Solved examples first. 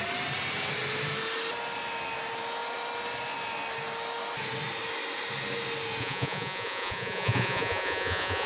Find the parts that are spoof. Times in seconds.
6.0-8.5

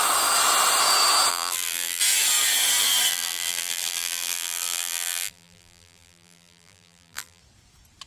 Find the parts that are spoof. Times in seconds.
1.3-2.0; 3.1-7.4

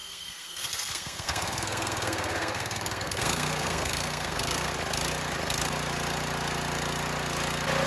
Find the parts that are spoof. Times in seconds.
0.0-4.7

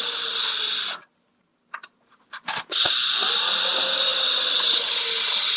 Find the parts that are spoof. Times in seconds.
none

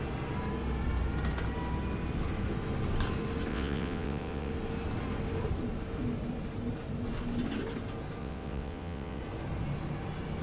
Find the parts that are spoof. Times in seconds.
3.5-4.5; 8.2-9.2